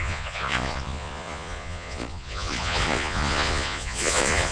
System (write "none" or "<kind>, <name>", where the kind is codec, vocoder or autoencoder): vocoder, Vocos